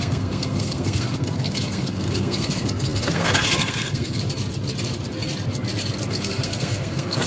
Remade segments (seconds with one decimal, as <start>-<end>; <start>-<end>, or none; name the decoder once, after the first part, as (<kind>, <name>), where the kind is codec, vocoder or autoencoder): 0.0-4.2 (codec, SNAC); 6.1-7.3